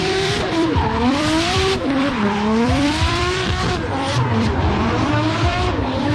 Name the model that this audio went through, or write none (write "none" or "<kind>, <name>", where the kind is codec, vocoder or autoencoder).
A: vocoder, BigVGAN v2